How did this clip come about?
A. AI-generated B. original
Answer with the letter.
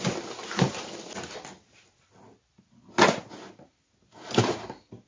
B